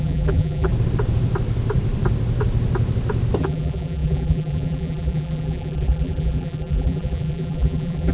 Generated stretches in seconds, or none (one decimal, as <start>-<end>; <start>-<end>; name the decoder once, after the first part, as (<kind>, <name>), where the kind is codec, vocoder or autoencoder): 0.0-0.7 (vocoder, BigVGAN v2); 3.4-8.1